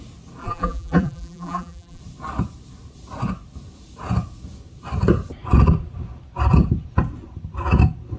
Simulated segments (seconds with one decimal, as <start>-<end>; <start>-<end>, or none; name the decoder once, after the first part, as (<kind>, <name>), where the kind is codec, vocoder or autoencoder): 0.4-2.0 (vocoder, BigVGAN v2)